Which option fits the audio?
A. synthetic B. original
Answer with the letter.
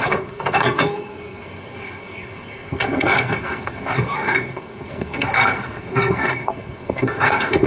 A